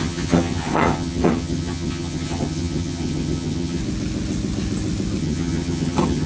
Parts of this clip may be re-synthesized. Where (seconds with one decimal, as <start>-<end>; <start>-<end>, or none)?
0.0-3.8; 5.2-6.3